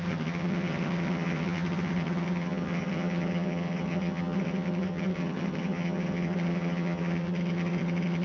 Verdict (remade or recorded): remade